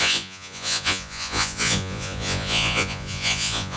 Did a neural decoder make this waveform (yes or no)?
yes